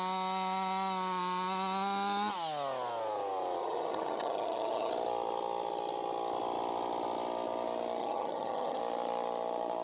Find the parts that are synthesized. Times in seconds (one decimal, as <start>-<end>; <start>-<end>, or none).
3.6-4.9; 8.0-8.8